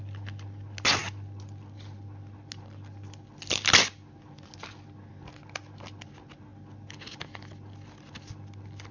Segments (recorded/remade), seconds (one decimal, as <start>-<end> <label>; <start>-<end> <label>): 0.0-8.9 recorded